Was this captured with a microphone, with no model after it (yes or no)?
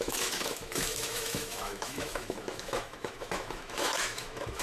no